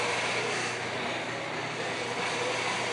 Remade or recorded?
recorded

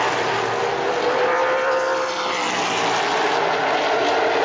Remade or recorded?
recorded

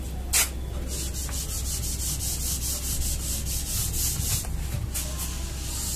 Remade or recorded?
recorded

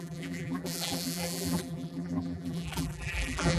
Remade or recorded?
remade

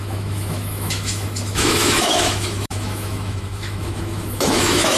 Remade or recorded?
remade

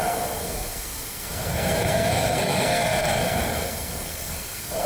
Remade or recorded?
remade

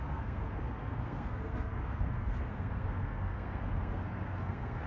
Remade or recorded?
remade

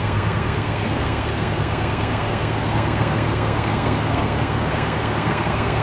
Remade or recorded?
remade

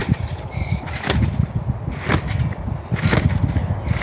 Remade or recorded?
recorded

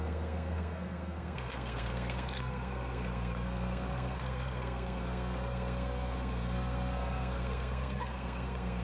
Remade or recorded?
remade